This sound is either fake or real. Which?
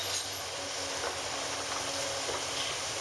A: real